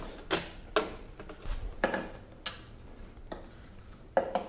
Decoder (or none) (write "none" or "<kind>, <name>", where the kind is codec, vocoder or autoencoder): none